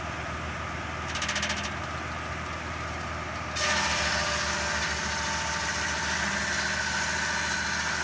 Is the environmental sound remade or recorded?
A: recorded